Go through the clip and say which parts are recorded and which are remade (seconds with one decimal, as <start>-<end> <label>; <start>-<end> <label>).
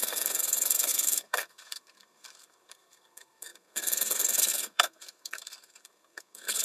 0.0-6.6 remade